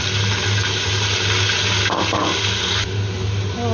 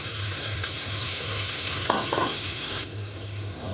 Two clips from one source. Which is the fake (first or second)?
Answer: second